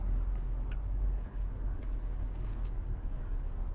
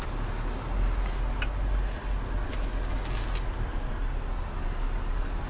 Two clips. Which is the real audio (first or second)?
second